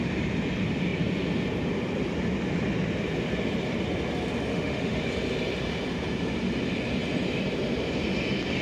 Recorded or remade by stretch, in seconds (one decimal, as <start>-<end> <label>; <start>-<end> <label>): 0.0-4.5 recorded; 4.5-5.0 remade; 5.0-8.6 recorded